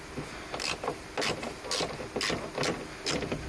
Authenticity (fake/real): real